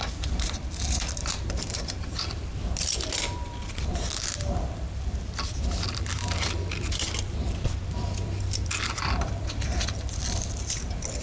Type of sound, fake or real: fake